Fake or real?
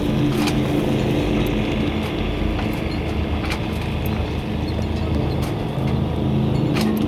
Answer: real